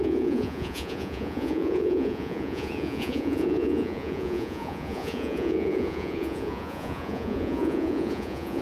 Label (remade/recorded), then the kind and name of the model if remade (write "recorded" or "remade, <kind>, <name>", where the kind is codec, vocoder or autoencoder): remade, vocoder, Vocos